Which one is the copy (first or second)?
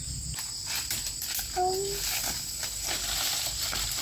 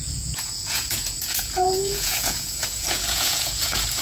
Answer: second